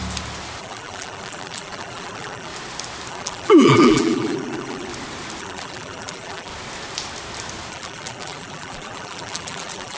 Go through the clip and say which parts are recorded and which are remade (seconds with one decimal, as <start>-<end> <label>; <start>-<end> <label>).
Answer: 0.0-0.6 recorded; 0.6-2.5 remade; 2.5-3.1 recorded; 3.1-4.9 remade; 4.9-5.4 recorded; 5.4-6.5 remade; 6.5-7.7 recorded; 7.7-10.0 remade

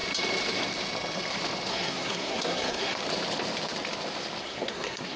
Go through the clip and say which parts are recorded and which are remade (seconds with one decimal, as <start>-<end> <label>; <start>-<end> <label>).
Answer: 0.0-1.7 recorded; 1.7-3.0 remade; 3.0-4.4 recorded; 4.4-5.2 remade

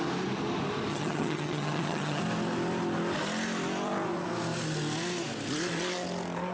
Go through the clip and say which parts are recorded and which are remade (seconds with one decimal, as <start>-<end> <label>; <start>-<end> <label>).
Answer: 0.0-0.9 recorded; 0.9-2.2 remade; 2.2-6.5 recorded

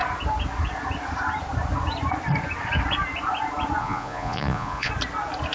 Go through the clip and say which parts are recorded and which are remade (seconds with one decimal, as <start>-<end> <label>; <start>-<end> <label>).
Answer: 0.0-3.8 recorded; 3.8-4.9 remade; 4.9-5.5 recorded

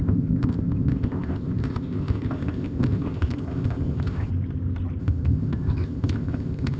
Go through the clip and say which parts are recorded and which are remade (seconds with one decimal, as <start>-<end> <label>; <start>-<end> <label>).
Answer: 0.0-4.3 remade; 4.3-5.0 recorded; 5.0-6.8 remade

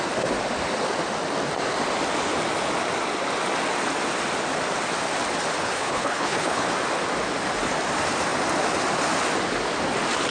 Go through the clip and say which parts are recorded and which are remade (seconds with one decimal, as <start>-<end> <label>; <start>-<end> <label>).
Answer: 0.0-5.6 recorded; 5.6-6.7 remade; 6.7-10.3 recorded

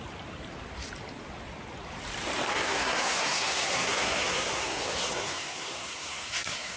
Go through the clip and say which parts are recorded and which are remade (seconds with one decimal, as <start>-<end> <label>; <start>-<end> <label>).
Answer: 0.0-2.5 recorded; 2.5-6.8 remade